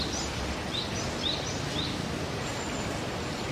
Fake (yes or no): no